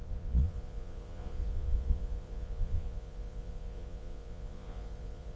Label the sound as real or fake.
fake